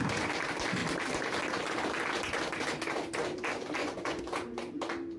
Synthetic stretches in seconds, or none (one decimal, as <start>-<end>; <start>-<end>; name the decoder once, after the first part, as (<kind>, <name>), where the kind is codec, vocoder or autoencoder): 3.8-4.8 (vocoder, Vocos)